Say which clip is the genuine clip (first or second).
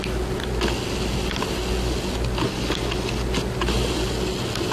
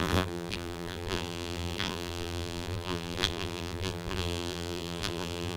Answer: first